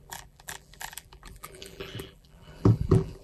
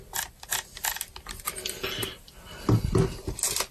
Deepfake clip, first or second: first